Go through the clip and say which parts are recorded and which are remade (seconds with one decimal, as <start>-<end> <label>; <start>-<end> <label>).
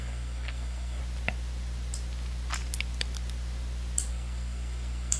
0.0-1.0 remade; 1.0-4.1 recorded; 4.1-5.2 remade